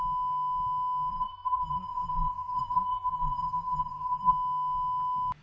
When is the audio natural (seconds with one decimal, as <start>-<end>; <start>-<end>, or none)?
0.0-1.1; 4.3-5.4